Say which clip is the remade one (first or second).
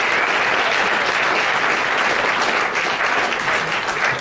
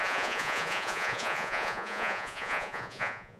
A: second